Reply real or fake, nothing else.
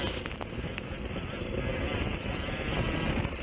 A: real